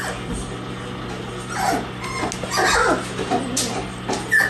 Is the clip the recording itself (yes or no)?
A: yes